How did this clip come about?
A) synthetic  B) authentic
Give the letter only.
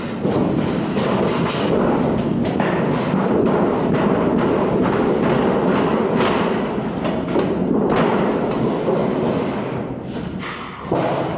B